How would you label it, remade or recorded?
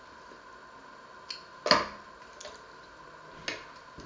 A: recorded